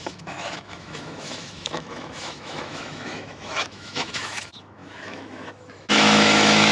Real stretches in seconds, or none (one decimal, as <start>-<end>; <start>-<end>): none

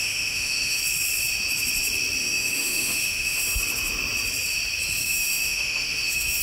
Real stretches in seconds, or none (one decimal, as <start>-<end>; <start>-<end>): 0.8-2.2; 3.6-5.0